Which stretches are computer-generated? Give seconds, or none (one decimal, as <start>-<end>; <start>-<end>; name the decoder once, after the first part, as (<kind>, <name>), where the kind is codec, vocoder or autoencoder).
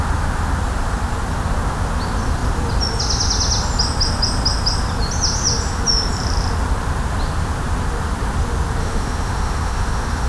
8.8-10.3 (autoencoder, DAC-VAE)